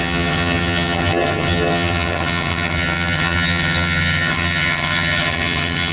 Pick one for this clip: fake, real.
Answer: fake